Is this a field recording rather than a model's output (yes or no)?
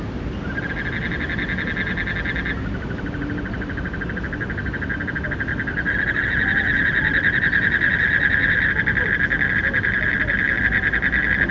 yes